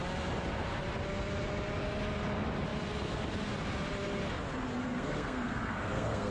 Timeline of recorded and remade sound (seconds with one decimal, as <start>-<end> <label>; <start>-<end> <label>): 0.0-4.8 recorded; 4.8-6.3 remade